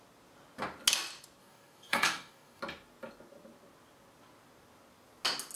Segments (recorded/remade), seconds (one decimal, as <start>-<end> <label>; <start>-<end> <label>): 0.0-1.4 recorded; 1.4-2.6 remade; 2.6-5.6 recorded